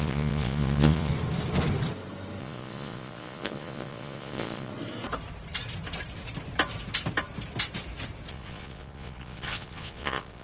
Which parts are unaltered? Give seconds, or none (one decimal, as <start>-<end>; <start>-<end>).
1.1-2.4; 4.7-8.3